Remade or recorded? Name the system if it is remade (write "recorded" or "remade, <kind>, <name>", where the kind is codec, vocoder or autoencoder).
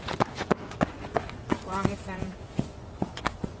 remade, vocoder, Vocos